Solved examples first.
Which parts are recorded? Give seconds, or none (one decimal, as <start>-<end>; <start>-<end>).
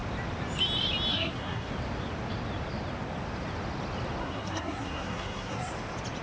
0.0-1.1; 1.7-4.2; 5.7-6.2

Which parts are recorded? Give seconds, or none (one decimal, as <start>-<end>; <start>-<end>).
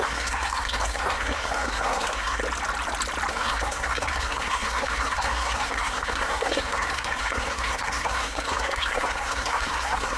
2.4-3.3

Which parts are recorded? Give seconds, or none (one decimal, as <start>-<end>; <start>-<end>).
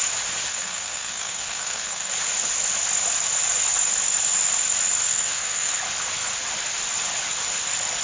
0.0-0.5; 2.1-5.1; 5.7-8.0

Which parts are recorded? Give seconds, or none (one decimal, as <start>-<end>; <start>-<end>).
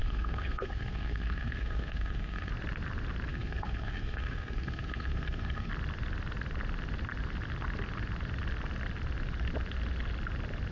2.5-3.3; 5.7-10.7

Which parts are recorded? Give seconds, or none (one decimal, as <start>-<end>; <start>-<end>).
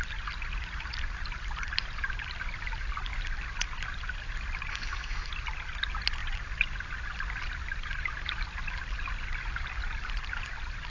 0.0-4.7; 5.3-10.9